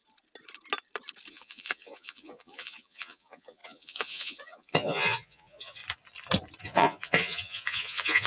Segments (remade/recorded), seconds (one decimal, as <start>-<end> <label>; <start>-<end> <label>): 0.0-1.3 recorded; 1.3-5.8 remade; 5.8-6.6 recorded; 6.6-8.3 remade